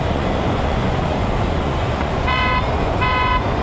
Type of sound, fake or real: fake